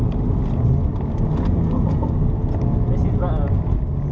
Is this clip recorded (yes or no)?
yes